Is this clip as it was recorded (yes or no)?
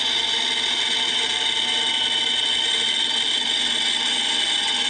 yes